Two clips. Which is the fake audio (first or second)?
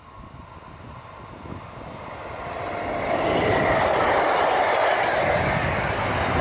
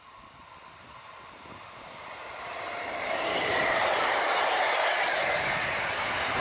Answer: second